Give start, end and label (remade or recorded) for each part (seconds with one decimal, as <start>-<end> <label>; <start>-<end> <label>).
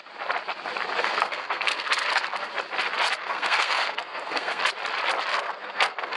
0.0-1.0 recorded; 1.0-2.5 remade; 2.5-3.2 recorded; 3.2-4.6 remade; 4.6-5.3 recorded; 5.3-6.2 remade